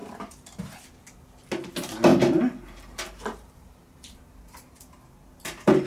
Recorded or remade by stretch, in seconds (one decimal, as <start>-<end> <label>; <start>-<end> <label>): 0.0-0.8 remade; 0.8-2.1 recorded; 2.1-5.9 remade